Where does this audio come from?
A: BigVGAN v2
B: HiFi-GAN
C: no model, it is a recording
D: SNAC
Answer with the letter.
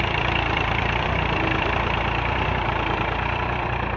A